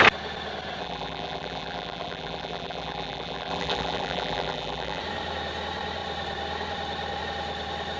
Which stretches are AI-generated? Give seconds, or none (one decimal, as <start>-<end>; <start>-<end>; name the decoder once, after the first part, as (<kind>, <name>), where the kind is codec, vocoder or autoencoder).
0.8-5.0 (vocoder, BigVGAN v2)